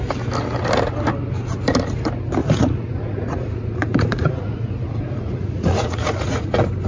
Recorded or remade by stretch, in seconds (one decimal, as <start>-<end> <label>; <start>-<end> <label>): 0.0-2.4 recorded; 2.4-6.5 remade; 6.5-6.9 recorded